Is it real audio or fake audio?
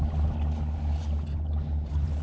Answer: real